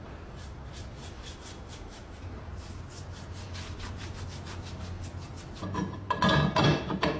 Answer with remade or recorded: recorded